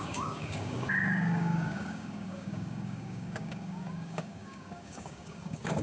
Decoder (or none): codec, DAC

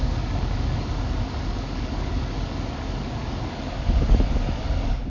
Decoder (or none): codec, DAC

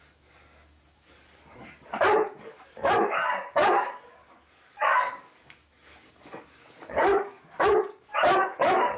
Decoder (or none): codec, DAC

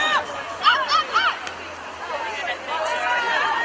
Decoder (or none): none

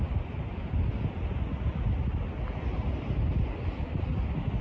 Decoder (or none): none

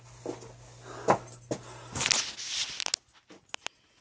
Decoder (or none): none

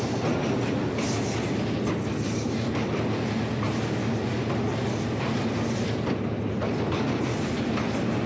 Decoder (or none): none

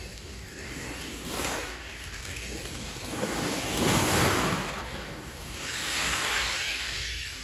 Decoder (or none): codec, DAC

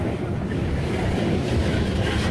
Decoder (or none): codec, DAC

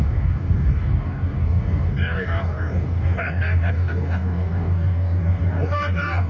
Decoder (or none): codec, DAC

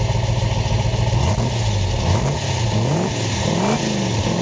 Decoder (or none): none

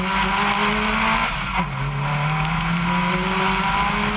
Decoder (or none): none